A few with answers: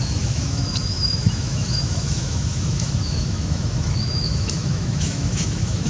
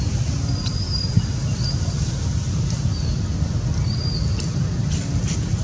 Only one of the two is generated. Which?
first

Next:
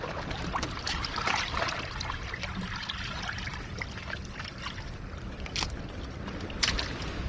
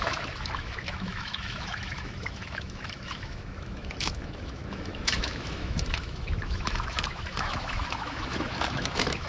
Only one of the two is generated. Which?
second